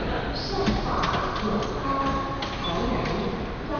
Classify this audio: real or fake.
real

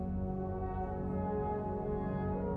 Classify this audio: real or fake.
real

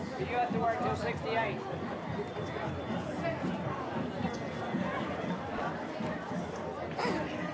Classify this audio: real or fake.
real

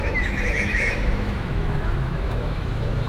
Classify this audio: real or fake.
fake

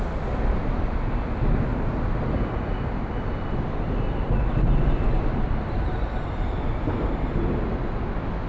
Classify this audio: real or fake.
real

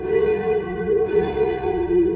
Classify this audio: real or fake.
fake